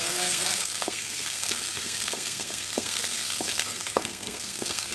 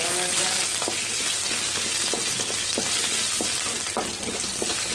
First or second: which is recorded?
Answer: second